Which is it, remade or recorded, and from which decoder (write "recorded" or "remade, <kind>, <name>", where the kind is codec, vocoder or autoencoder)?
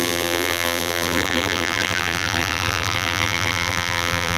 remade, vocoder, BigVGAN v2